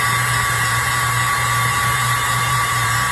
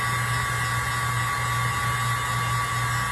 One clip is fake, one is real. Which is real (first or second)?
second